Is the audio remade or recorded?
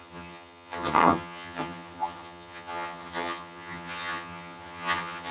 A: remade